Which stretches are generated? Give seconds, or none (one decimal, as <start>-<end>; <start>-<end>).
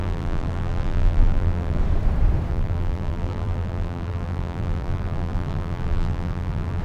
0.0-1.8; 2.5-6.8